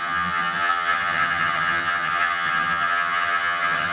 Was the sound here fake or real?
fake